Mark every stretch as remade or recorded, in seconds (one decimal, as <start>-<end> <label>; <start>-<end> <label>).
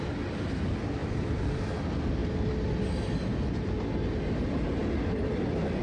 0.0-1.0 recorded; 1.0-1.6 remade; 1.6-5.8 recorded